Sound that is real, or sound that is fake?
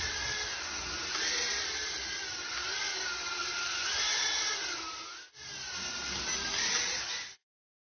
real